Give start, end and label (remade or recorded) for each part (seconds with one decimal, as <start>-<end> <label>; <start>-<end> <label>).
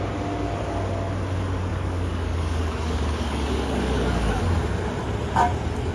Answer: 0.0-1.7 recorded; 1.7-4.4 remade; 4.4-5.9 recorded